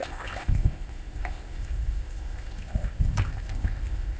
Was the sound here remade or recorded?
remade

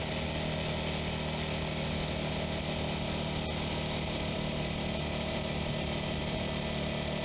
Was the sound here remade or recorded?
recorded